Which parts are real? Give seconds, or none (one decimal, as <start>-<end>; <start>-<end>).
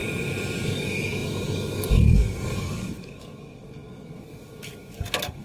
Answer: 0.0-0.6